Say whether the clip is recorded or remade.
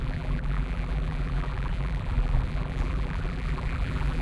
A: remade